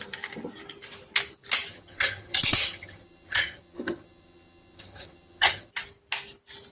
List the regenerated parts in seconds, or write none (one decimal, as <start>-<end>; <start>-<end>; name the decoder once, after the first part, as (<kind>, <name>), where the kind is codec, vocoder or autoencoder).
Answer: 1.7-5.7 (vocoder, HiFi-GAN)